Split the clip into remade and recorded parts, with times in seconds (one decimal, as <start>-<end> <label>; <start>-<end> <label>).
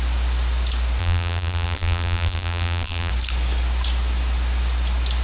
0.0-1.0 recorded; 1.0-3.1 remade; 3.1-5.2 recorded